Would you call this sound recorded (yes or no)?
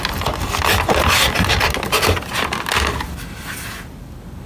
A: yes